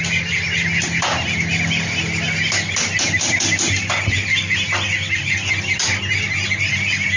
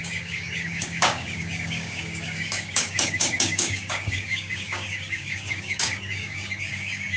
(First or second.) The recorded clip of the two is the first